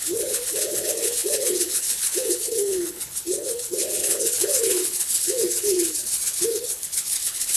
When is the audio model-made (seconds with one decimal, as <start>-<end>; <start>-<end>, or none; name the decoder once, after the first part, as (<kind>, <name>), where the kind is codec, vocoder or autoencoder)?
0.0-7.6 (codec, HILCodec)